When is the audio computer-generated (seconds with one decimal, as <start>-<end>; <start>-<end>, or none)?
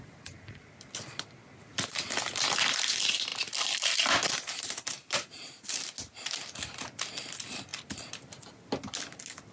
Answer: none